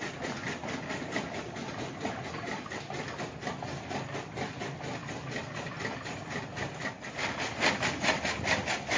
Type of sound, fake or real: real